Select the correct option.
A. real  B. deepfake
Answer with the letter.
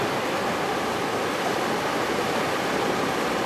A